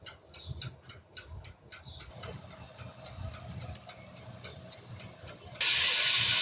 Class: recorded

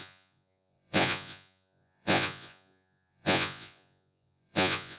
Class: remade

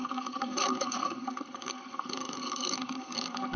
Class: remade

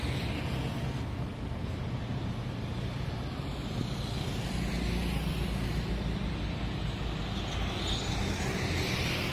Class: recorded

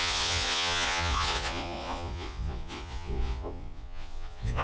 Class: remade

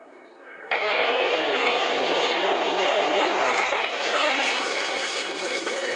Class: remade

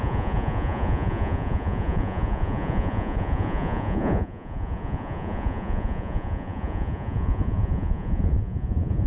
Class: remade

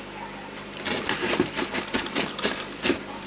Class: recorded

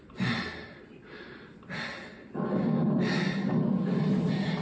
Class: recorded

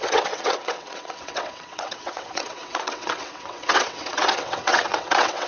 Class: remade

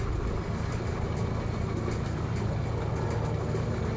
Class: recorded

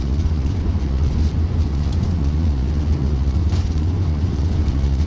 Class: remade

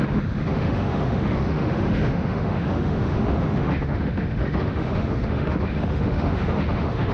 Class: remade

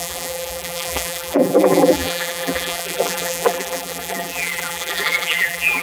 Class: remade